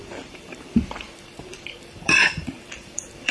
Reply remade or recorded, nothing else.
remade